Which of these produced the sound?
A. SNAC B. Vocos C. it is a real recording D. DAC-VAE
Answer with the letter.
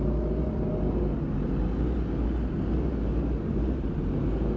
C